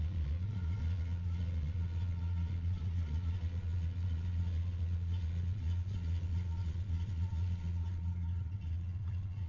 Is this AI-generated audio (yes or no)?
yes